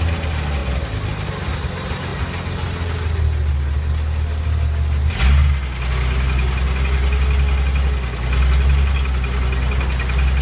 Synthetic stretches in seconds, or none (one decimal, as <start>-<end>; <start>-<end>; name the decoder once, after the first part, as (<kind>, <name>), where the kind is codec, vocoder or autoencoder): none